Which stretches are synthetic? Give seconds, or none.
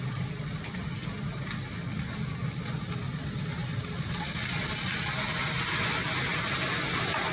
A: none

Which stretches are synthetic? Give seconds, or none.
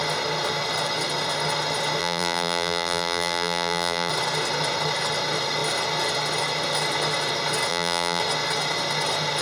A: 2.0-4.1 (vocoder, BigVGAN v2); 7.7-8.2